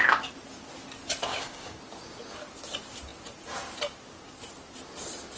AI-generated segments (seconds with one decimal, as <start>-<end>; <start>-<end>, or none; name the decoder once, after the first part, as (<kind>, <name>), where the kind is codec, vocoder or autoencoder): 1.3-1.8 (codec, DAC)